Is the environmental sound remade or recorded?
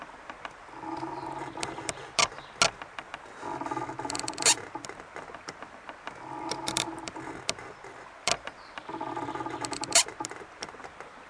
recorded